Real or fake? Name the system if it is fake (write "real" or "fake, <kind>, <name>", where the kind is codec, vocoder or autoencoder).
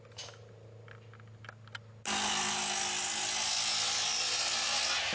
real